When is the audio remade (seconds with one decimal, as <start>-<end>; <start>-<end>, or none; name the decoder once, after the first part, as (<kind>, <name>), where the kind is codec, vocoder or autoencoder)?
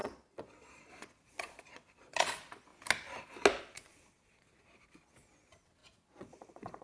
0.0-2.7 (vocoder, Vocos); 3.6-6.8